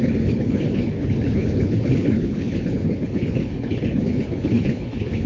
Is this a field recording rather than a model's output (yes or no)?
no